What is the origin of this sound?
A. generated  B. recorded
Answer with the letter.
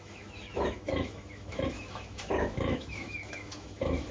A